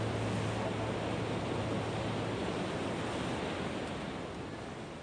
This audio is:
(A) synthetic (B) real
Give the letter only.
B